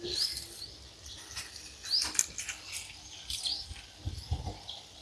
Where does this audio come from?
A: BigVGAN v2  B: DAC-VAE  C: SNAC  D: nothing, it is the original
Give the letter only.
D